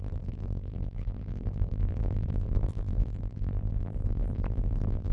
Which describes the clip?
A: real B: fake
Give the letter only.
B